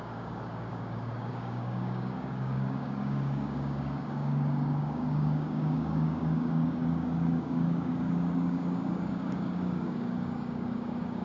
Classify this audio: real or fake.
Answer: fake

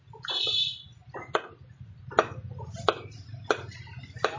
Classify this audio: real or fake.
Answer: real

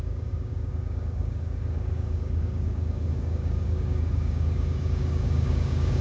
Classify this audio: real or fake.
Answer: fake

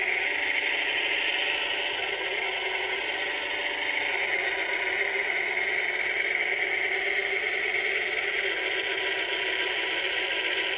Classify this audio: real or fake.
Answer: real